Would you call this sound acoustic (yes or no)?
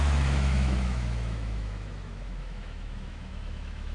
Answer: no